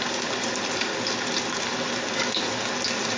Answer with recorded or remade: recorded